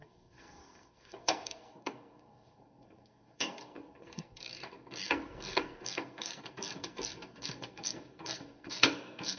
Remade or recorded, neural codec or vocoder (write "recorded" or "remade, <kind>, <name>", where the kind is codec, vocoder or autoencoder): remade, codec, SNAC